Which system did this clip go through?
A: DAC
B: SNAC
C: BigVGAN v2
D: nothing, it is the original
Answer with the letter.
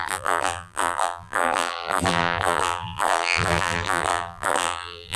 C